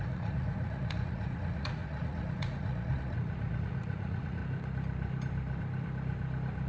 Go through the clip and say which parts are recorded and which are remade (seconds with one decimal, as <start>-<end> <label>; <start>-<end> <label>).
0.0-4.4 remade; 4.4-6.7 recorded